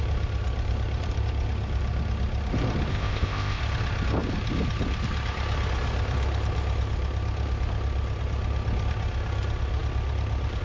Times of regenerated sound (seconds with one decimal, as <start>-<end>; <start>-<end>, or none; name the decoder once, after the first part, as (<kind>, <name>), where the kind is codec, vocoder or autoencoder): 2.9-3.6 (codec, ZipCodec)